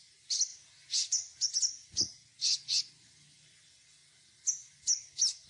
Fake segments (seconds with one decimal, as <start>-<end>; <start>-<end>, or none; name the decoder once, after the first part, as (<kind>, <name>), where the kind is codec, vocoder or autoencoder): none